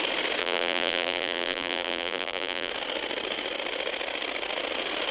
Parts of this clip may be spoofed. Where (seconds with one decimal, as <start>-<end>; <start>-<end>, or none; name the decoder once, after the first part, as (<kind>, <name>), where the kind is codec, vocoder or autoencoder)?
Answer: 0.4-2.7 (vocoder, BigVGAN v2)